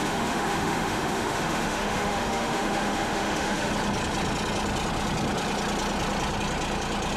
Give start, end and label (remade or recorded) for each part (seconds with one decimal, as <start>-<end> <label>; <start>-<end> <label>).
0.0-3.7 remade; 3.7-7.2 recorded